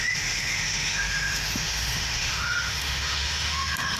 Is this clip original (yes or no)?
no